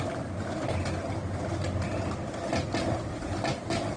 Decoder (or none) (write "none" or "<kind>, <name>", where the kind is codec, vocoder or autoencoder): none